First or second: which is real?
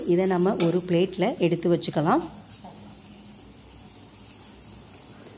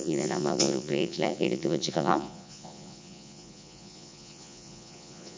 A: first